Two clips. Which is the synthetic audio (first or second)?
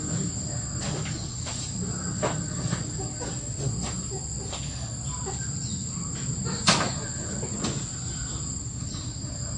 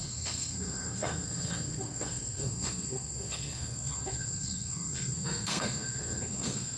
second